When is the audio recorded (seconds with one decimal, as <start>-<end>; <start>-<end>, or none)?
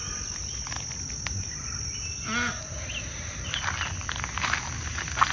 0.0-5.3